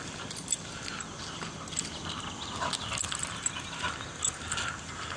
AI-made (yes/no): no